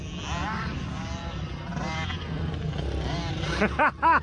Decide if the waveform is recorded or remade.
recorded